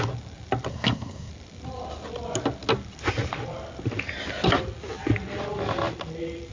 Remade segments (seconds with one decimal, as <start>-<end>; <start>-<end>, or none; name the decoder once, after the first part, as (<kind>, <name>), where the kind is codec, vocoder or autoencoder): 0.7-1.3 (codec, SNAC)